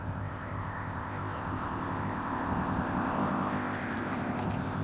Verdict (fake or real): fake